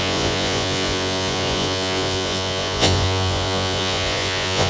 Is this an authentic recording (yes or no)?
no